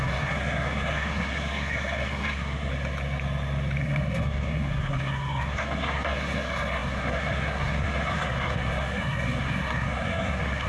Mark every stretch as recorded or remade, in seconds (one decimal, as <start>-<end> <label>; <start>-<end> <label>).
0.0-2.7 remade; 2.7-3.8 recorded; 3.8-10.7 remade